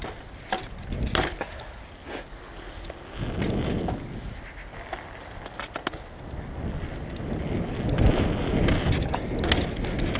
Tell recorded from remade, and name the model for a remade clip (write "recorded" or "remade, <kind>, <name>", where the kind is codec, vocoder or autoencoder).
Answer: recorded